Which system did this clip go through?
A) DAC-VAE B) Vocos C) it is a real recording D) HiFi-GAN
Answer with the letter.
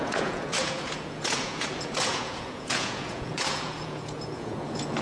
B